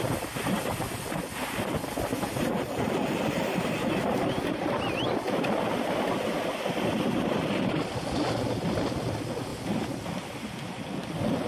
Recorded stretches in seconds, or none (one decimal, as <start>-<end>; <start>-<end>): 0.0-2.1; 5.0-9.5